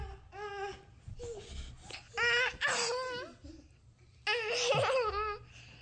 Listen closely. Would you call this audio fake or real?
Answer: real